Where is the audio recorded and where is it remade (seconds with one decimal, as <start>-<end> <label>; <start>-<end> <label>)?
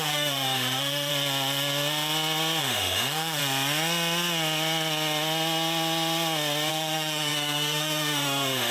0.0-1.1 remade; 1.1-2.6 recorded; 2.6-3.4 remade; 3.4-6.7 recorded; 6.7-8.7 remade